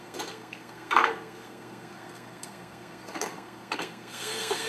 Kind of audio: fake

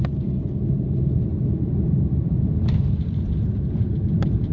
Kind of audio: real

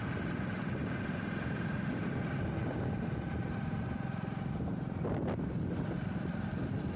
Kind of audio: real